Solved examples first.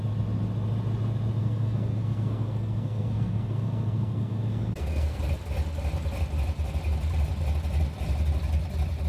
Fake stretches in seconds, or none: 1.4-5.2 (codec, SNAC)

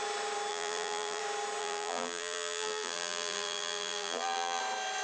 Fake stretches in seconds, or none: 0.5-1.2 (vocoder, BigVGAN v2); 1.6-4.6

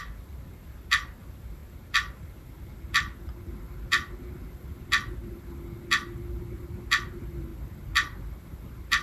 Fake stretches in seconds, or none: none

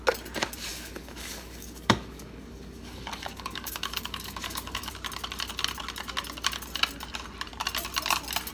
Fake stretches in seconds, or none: 0.7-4.9 (codec, DAC)

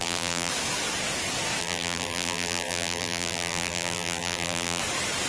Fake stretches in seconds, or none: 0.0-0.5 (vocoder, BigVGAN v2); 1.6-4.8